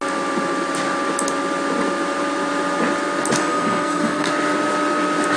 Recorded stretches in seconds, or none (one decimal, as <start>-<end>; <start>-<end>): 0.0-3.4; 4.3-5.4